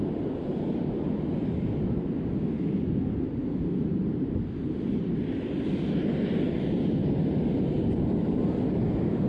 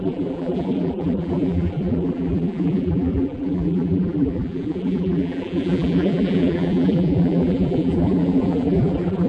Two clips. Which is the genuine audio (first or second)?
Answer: first